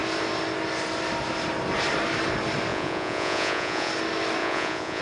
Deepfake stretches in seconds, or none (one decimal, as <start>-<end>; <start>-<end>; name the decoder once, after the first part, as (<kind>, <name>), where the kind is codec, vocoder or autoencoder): 2.7-3.9 (vocoder, Vocos); 4.4-5.0